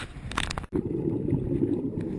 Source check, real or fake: real